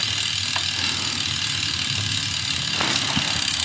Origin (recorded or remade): recorded